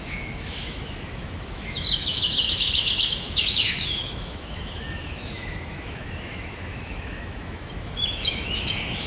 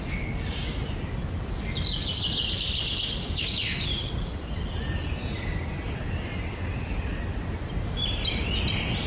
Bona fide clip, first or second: second